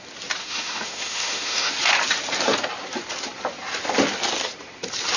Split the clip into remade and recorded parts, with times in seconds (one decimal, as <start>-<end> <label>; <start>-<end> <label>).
0.0-0.4 recorded; 0.4-1.7 remade; 1.7-5.2 recorded